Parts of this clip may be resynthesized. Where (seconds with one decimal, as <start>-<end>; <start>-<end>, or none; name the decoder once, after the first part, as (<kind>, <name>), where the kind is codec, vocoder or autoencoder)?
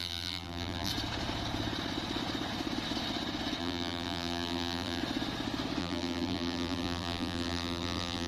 0.0-0.9 (vocoder, BigVGAN v2); 3.6-5.0; 5.8-8.3